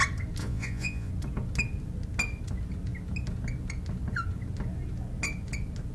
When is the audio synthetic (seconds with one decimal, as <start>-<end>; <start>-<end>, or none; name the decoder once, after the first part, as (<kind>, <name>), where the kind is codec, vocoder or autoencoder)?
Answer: 0.4-1.1 (vocoder, Vocos)